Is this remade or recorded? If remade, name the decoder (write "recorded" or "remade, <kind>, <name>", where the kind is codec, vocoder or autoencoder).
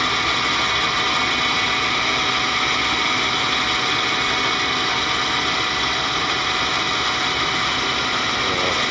recorded